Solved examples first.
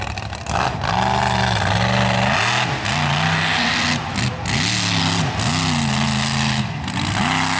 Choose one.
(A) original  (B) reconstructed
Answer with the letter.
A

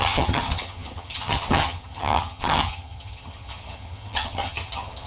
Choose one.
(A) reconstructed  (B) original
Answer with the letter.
A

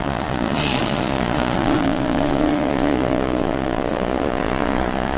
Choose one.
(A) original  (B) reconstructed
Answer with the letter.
B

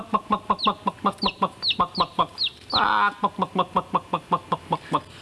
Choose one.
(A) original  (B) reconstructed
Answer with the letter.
A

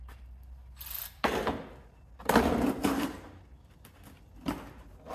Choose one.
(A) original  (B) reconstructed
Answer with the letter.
A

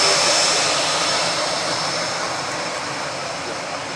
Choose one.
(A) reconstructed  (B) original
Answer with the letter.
B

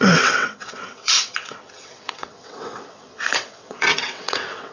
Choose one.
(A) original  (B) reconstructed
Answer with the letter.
B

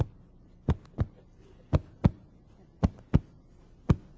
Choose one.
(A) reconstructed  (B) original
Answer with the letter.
B